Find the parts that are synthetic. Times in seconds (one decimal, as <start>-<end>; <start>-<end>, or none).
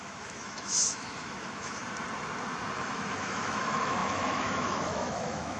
0.0-1.8; 2.8-5.6